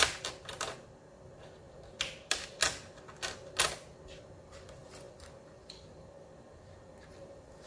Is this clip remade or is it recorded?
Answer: recorded